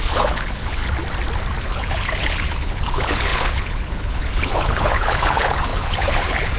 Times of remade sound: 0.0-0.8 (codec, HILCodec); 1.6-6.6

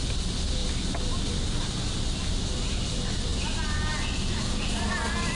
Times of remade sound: none